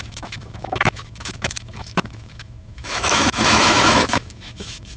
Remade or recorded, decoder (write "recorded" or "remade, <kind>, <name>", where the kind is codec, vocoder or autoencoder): remade, autoencoder, DAC-VAE